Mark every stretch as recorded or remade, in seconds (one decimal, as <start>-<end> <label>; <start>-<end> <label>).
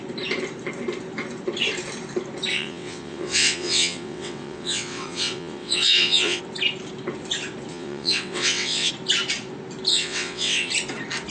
0.0-2.5 recorded; 2.5-6.4 remade; 6.4-7.7 recorded; 7.7-8.9 remade; 8.9-9.9 recorded; 9.9-10.7 remade; 10.7-11.3 recorded